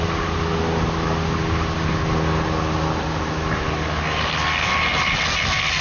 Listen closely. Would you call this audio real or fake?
real